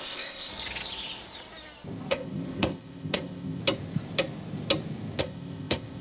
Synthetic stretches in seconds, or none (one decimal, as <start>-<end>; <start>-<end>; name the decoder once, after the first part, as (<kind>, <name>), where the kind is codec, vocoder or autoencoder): 0.0-0.5 (codec, ZipCodec); 2.1-3.6; 5.2-6.0